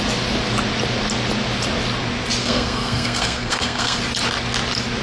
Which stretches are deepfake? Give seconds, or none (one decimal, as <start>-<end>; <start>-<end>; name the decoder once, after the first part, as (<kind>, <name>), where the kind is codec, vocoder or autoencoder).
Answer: 2.4-4.0 (codec, SNAC)